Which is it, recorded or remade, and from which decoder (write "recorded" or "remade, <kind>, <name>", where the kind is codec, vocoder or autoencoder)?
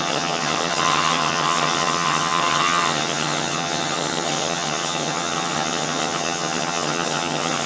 remade, vocoder, HiFi-GAN